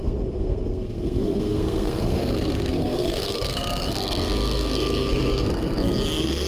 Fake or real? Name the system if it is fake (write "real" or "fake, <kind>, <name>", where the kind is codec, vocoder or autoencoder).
fake, codec, SNAC